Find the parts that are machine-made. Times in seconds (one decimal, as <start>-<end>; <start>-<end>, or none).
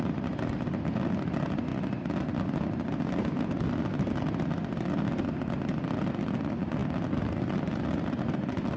0.0-1.7; 6.1-8.8